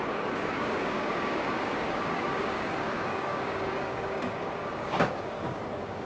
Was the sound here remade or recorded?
remade